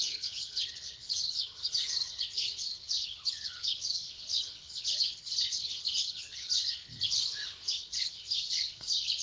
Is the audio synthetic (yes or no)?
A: yes